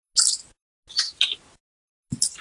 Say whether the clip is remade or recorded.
recorded